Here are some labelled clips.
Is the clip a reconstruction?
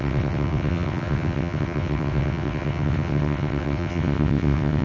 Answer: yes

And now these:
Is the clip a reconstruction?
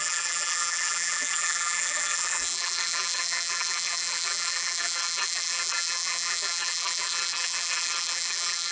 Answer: yes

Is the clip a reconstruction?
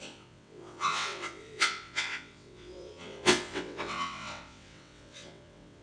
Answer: yes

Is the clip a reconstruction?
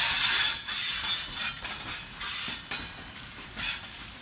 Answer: no